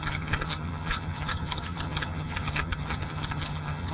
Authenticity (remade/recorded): remade